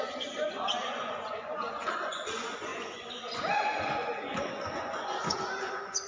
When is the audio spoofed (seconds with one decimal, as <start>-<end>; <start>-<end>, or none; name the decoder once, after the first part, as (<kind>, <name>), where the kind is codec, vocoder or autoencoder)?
0.0-6.1 (vocoder, Vocos)